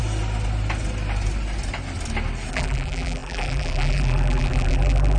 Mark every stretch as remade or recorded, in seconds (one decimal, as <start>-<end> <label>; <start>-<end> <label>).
0.0-2.5 recorded; 2.5-5.2 remade